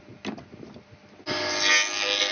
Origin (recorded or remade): recorded